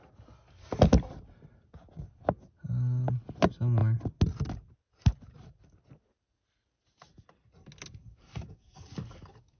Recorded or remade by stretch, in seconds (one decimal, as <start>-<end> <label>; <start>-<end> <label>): 0.0-8.0 recorded; 8.0-9.6 remade